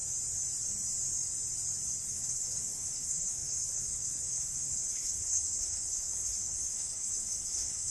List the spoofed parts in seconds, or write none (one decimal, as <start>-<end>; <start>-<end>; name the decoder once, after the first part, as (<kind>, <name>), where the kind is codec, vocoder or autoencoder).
2.1-7.9 (codec, HILCodec)